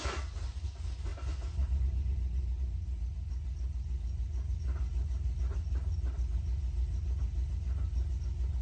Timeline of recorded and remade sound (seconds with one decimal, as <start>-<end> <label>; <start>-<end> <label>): 0.0-8.6 recorded